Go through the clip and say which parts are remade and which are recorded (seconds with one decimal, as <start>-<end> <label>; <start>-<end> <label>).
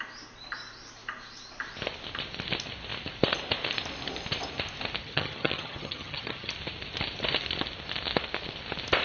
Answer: 0.0-5.0 recorded; 5.0-6.5 remade; 6.5-9.0 recorded